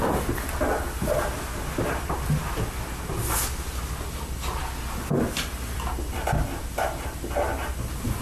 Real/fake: real